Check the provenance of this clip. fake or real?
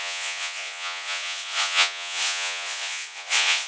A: fake